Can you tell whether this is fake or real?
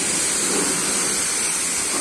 real